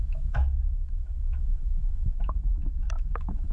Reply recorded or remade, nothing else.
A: remade